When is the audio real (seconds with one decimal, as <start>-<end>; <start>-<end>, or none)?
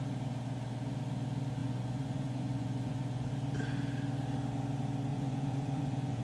0.0-1.6; 3.3-5.1